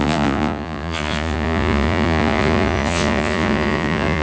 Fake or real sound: fake